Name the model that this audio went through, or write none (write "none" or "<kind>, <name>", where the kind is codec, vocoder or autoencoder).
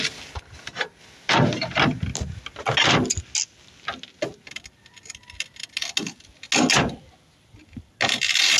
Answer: none